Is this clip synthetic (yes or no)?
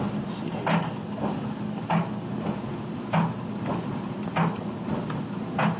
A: no